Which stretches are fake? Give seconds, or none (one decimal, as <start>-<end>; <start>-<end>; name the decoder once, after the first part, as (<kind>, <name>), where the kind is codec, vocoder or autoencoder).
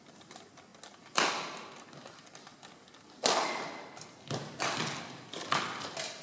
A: none